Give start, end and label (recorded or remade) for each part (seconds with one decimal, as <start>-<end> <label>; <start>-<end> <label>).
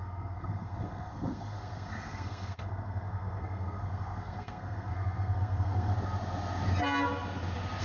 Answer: 0.0-5.9 remade; 5.9-7.8 recorded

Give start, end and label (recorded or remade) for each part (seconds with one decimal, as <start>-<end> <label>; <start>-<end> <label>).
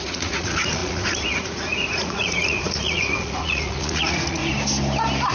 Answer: 0.0-4.4 remade; 4.4-5.3 recorded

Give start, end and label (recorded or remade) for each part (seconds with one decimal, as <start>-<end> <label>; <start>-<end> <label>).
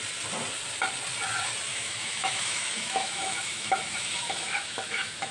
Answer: 0.0-1.7 recorded; 1.7-5.3 remade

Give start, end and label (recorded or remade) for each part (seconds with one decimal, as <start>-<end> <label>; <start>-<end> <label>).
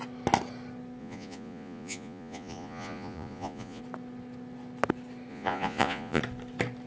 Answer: 0.0-1.0 recorded; 1.0-3.8 remade; 3.8-5.3 recorded; 5.3-6.2 remade; 6.2-6.9 recorded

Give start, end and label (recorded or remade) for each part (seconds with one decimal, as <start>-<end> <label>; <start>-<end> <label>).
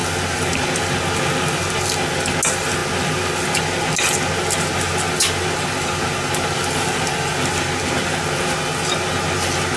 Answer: 0.0-9.8 recorded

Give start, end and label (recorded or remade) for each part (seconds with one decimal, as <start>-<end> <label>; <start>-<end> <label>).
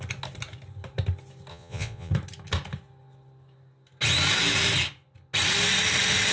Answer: 0.0-1.5 recorded; 1.5-2.1 remade; 2.1-6.3 recorded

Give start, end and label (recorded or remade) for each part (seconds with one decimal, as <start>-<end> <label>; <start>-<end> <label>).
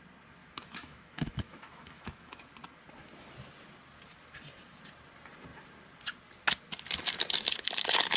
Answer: 0.0-0.4 recorded; 0.4-2.4 remade; 2.4-8.2 recorded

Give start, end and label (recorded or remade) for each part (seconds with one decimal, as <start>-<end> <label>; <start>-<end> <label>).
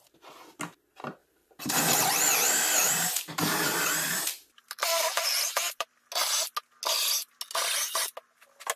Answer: 0.0-1.2 recorded; 1.2-2.0 remade; 2.0-2.8 recorded; 2.8-5.9 remade; 5.9-8.8 recorded